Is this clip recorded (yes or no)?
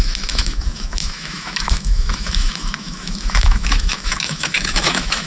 no